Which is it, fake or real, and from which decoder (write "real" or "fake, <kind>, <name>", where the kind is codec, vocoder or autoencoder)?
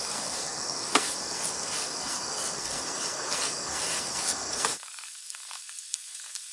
fake, codec, SNAC